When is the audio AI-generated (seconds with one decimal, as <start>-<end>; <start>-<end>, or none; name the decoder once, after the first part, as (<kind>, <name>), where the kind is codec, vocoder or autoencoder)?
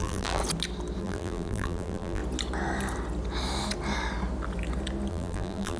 0.0-0.4 (vocoder, BigVGAN v2); 1.0-2.2; 5.1-5.8